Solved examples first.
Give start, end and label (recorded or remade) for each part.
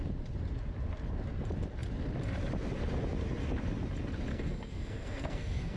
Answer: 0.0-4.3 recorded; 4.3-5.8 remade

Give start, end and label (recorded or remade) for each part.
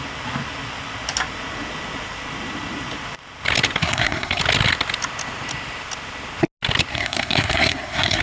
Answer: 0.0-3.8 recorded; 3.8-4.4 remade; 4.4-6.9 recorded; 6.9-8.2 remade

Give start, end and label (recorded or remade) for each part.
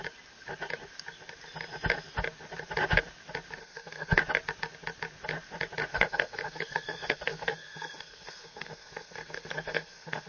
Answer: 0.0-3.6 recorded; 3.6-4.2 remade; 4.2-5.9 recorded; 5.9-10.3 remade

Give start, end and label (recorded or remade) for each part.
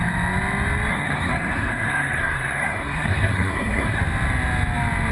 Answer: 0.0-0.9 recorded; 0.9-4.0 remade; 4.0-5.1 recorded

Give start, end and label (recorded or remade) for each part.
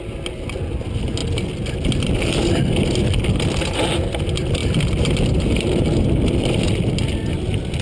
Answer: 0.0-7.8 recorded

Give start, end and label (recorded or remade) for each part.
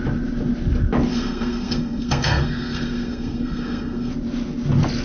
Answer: 0.0-1.1 recorded; 1.1-4.1 remade; 4.1-5.0 recorded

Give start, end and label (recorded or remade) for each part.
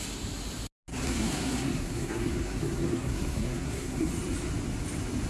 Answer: 0.0-0.9 recorded; 0.9-4.1 remade; 4.1-5.3 recorded